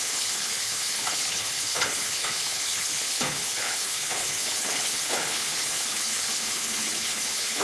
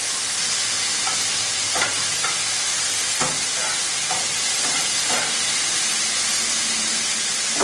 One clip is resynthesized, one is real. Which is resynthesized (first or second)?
first